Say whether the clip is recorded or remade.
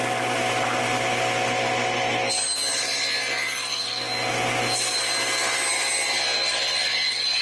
recorded